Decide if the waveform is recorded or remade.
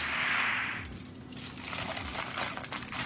recorded